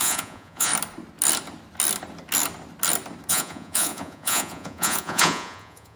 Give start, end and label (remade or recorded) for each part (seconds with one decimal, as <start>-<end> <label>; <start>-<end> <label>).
0.0-0.7 remade; 0.7-3.3 recorded; 3.3-6.0 remade